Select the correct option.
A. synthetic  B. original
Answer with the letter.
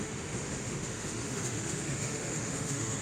A